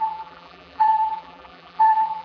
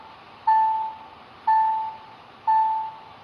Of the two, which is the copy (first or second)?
first